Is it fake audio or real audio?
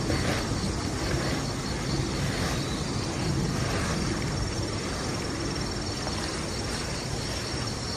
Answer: real